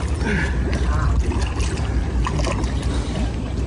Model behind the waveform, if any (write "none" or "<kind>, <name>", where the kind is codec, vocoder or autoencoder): none